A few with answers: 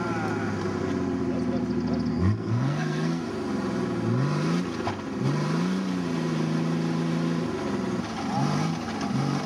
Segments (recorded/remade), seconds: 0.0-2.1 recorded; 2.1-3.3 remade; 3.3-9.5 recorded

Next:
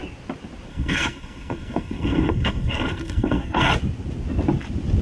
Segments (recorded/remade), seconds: 0.0-0.7 recorded; 0.7-3.7 remade; 3.7-5.0 recorded

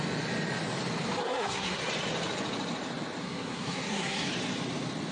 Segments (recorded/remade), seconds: 0.0-1.2 recorded; 1.2-1.8 remade; 1.8-3.2 recorded; 3.2-4.3 remade; 4.3-5.1 recorded

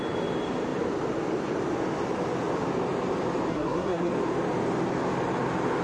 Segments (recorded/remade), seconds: 0.0-3.5 recorded; 3.5-4.1 remade; 4.1-5.8 recorded